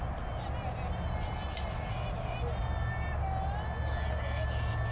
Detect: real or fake real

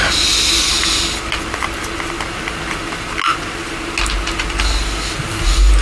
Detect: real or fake real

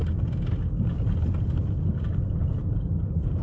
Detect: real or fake real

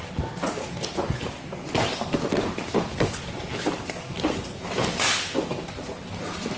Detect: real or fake real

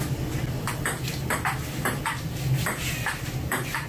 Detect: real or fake real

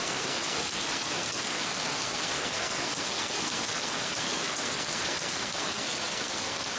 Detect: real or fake fake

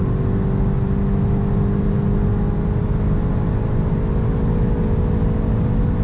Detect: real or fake real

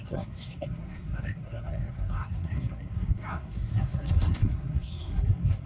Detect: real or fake fake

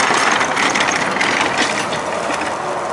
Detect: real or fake real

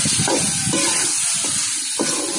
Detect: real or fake real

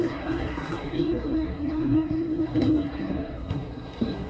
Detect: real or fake fake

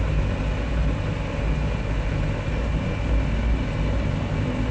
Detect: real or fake real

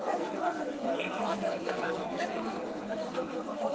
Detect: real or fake fake